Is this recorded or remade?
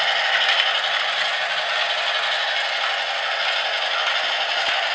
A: recorded